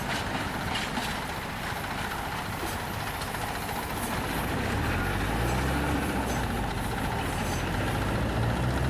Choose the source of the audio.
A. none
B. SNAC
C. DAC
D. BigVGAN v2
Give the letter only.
A